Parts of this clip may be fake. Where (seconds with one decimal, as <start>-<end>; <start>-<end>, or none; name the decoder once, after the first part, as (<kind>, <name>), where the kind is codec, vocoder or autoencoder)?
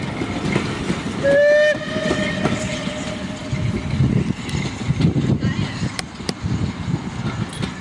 none